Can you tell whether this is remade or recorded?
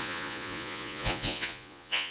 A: remade